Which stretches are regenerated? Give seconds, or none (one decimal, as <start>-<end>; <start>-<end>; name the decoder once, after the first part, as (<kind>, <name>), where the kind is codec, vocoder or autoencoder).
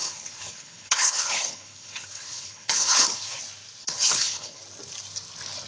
0.0-3.4 (codec, HILCodec); 3.8-4.6